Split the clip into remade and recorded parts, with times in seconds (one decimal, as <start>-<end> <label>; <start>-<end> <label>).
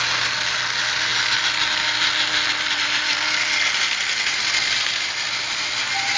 0.0-6.2 recorded